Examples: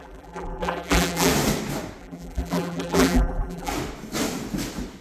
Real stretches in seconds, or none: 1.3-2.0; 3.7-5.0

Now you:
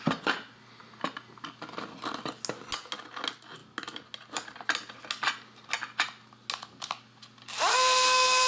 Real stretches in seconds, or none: 0.0-7.7

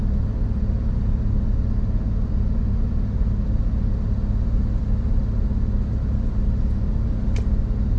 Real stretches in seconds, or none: 0.0-8.0

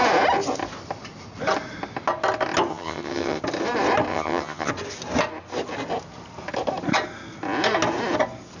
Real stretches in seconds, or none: 0.0-2.7; 3.4-4.1; 4.7-8.6

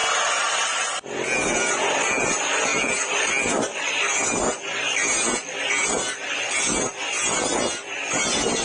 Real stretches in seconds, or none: 0.0-8.6